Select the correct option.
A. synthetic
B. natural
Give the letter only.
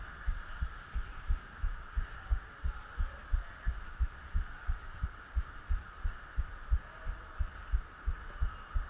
B